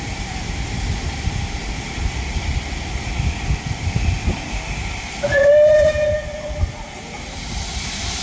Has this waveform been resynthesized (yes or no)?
yes